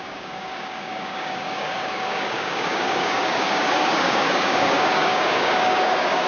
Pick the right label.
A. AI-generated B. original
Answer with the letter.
A